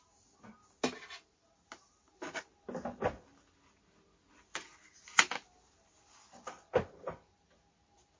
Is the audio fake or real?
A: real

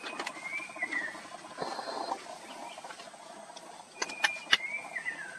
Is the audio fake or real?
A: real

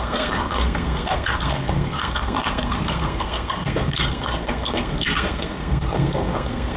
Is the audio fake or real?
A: fake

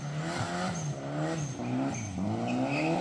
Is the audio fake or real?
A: real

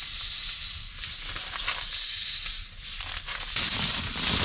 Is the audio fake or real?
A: real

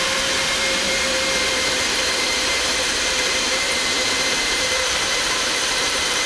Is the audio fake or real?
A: fake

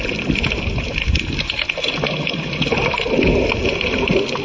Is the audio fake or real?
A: real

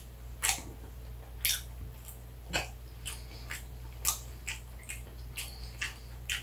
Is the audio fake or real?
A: real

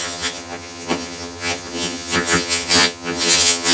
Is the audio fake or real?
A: fake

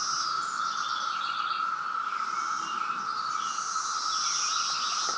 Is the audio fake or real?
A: real